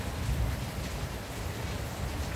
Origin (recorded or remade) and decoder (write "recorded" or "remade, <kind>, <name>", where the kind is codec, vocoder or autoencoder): recorded